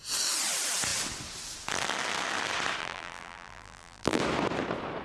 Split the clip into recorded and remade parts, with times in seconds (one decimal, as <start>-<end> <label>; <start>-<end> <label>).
0.0-2.8 recorded; 2.8-4.2 remade; 4.2-5.0 recorded